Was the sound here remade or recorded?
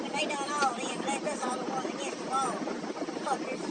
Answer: recorded